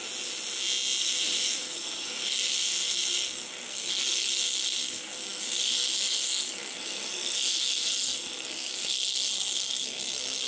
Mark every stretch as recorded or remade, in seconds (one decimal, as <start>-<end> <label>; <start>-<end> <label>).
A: 0.0-1.0 recorded; 1.0-10.5 remade

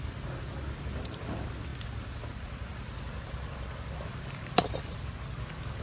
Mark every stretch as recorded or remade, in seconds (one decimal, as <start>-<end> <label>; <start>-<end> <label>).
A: 0.0-5.8 recorded

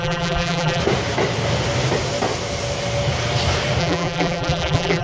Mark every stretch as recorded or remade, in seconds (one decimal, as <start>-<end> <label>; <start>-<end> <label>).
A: 0.0-0.8 remade; 0.8-3.8 recorded; 3.8-5.0 remade